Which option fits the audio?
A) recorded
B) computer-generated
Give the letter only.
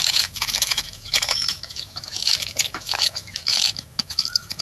B